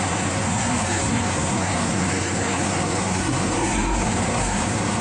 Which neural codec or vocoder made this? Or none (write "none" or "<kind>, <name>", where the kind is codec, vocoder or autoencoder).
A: codec, SNAC